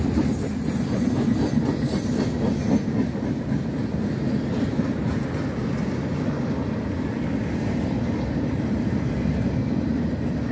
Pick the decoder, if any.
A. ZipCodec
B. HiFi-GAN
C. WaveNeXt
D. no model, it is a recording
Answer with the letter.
D